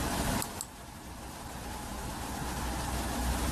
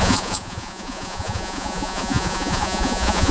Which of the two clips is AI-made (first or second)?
second